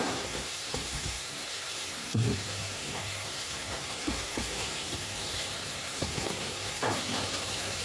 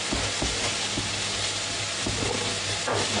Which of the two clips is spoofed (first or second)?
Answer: first